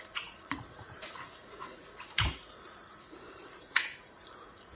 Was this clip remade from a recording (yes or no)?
yes